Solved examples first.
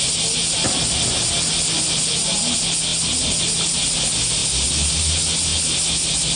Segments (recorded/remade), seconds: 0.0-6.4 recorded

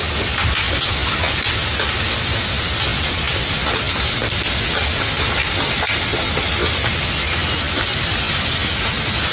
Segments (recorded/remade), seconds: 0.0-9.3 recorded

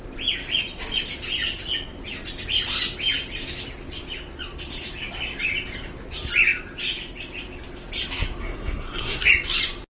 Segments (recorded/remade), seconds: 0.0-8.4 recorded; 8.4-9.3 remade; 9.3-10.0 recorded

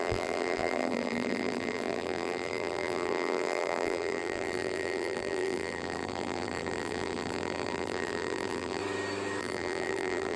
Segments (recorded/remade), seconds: 0.0-8.8 remade; 8.8-9.4 recorded; 9.4-10.4 remade

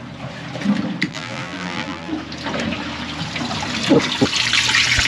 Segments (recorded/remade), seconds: 0.0-1.1 recorded; 1.1-2.1 remade; 2.1-5.1 recorded